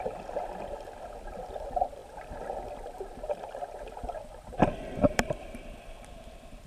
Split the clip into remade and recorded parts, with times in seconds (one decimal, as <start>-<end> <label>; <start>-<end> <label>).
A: 0.0-2.0 recorded; 2.0-6.0 remade; 6.0-6.7 recorded